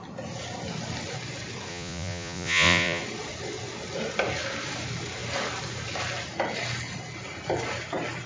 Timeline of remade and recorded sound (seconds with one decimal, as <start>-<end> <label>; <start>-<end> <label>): 0.0-1.7 recorded; 1.7-3.0 remade; 3.0-8.3 recorded